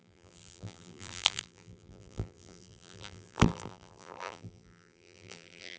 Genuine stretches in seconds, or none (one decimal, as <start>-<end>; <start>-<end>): none